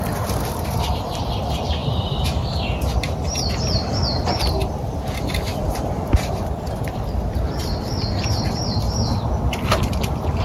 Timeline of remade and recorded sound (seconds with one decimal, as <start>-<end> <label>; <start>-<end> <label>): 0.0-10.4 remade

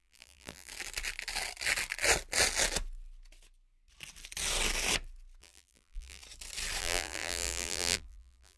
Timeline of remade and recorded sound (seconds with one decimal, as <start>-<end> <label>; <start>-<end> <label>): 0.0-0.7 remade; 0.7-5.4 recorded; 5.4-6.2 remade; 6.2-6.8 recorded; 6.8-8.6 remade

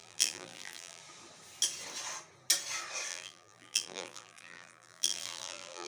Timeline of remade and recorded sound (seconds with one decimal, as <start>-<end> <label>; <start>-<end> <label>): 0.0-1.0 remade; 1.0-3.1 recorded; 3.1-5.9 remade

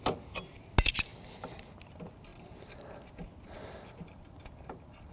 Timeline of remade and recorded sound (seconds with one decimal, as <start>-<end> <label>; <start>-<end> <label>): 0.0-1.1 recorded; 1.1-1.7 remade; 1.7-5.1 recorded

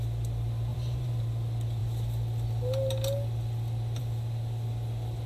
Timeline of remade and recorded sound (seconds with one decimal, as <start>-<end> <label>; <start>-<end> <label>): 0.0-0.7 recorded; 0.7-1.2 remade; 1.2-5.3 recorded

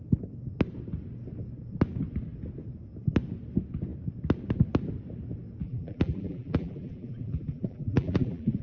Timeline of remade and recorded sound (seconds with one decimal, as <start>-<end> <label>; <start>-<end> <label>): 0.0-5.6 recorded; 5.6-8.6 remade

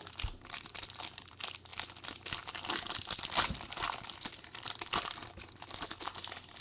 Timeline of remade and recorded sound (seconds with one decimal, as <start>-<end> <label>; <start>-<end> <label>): 0.0-1.7 remade; 1.7-2.4 recorded; 2.4-5.2 remade; 5.2-5.9 recorded; 5.9-6.6 remade

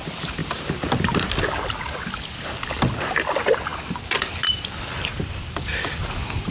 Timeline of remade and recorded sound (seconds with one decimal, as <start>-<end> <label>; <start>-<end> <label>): 0.0-6.5 recorded